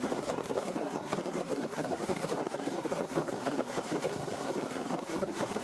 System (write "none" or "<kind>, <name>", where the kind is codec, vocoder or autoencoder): codec, SNAC